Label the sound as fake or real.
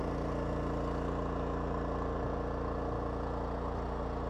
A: real